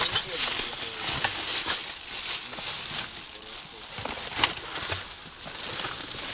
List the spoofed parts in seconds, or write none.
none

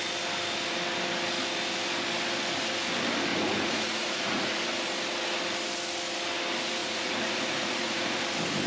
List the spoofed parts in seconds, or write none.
3.3-4.6 (vocoder, Vocos); 6.8-8.2

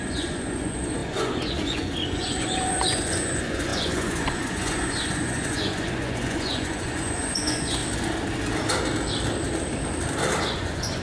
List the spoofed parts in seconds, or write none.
0.0-7.8 (vocoder, Vocos); 10.4-11.0

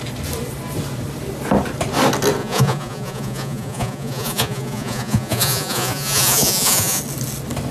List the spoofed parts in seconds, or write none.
2.4-7.0 (vocoder, Vocos)